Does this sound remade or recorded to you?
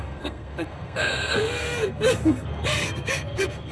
remade